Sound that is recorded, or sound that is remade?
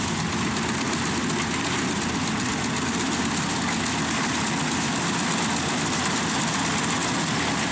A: recorded